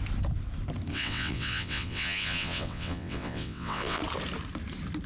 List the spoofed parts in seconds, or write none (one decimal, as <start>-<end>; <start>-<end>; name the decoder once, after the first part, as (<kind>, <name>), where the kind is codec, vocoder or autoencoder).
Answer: 0.9-4.0 (vocoder, WaveNeXt)